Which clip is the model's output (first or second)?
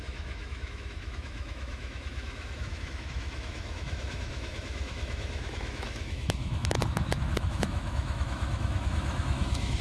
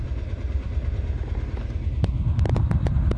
first